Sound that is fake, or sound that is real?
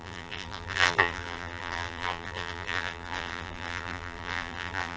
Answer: fake